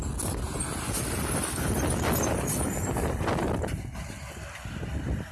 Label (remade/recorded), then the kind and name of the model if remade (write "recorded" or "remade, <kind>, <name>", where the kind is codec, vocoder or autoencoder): recorded